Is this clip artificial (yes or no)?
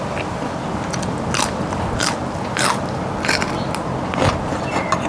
no